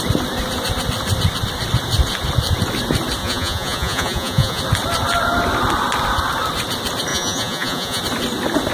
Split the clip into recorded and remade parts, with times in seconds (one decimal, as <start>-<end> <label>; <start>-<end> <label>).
0.0-3.2 recorded; 3.2-4.6 remade; 4.6-7.1 recorded; 7.1-8.0 remade; 8.0-8.7 recorded